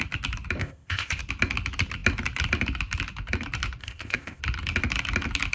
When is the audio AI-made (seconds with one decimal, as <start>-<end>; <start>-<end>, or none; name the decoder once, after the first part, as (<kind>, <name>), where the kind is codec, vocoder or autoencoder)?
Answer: 0.6-1.2 (codec, ZipCodec); 3.8-4.4